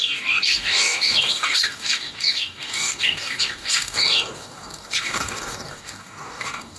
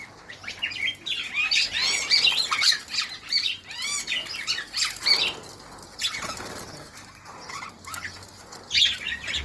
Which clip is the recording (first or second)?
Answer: second